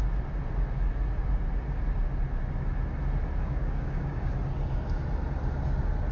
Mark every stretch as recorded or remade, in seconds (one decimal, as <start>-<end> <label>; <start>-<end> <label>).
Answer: 0.0-3.4 recorded; 3.4-4.3 remade; 4.3-6.1 recorded